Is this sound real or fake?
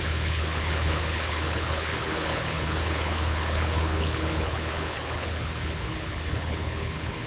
fake